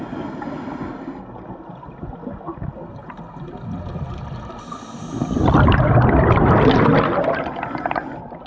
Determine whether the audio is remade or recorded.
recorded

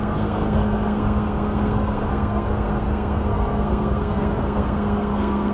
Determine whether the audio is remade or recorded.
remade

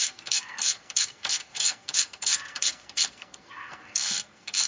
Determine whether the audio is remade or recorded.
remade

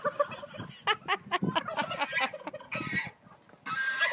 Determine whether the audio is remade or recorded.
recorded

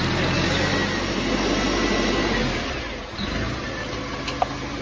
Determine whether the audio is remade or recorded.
recorded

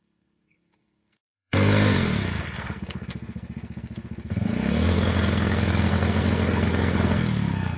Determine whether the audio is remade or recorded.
remade